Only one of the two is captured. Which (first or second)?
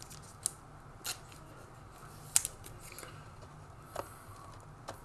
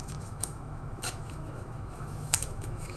first